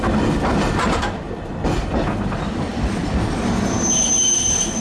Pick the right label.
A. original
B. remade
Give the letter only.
A